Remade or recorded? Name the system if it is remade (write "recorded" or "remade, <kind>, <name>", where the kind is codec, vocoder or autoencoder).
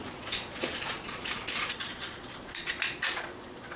remade, vocoder, Vocos